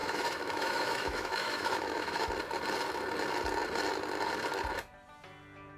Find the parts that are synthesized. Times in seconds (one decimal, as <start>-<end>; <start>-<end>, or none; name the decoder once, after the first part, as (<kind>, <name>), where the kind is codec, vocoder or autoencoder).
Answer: 0.0-2.3 (autoencoder, DAC-VAE)